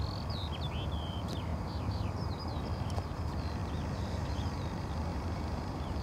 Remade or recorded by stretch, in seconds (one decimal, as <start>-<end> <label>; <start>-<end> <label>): 0.0-1.5 recorded; 1.5-3.0 remade; 3.0-3.6 recorded; 3.6-4.4 remade; 4.4-5.1 recorded; 5.1-6.0 remade